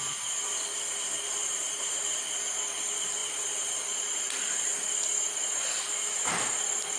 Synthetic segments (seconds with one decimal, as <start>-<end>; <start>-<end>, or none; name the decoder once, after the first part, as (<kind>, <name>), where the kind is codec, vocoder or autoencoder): 1.4-2.0 (vocoder, BigVGAN v2); 3.2-4.7; 5.4-5.9